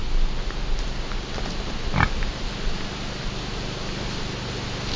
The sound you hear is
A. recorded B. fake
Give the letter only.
A